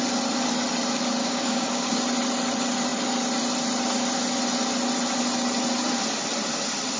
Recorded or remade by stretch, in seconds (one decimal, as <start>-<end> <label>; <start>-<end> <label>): 0.0-1.2 recorded; 1.2-2.0 remade; 2.0-7.0 recorded